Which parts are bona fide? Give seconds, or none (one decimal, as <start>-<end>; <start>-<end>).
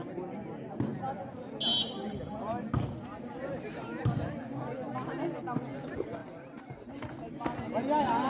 0.0-6.2; 7.0-8.3